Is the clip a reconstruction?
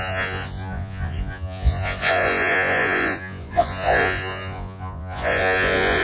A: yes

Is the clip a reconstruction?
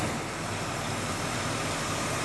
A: no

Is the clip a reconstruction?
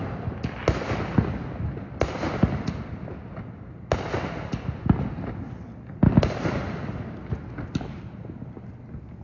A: no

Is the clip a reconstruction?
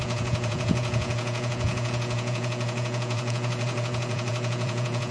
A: yes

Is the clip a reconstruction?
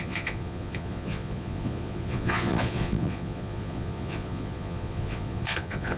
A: yes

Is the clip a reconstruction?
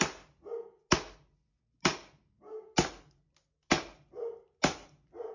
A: no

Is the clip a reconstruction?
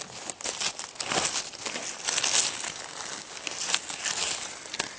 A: no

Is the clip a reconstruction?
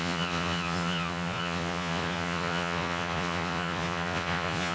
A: yes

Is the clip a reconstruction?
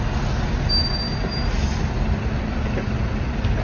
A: no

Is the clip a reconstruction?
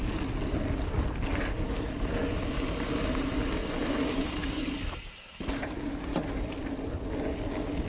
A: no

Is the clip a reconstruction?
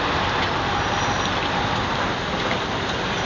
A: no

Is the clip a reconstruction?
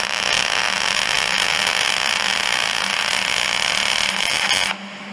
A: no